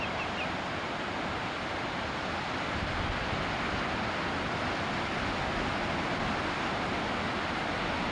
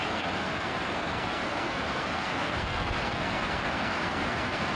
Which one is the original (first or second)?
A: first